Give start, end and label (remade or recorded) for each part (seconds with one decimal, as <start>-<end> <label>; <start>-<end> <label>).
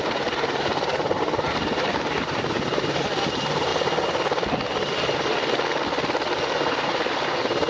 0.0-3.7 remade; 3.7-6.5 recorded; 6.5-7.7 remade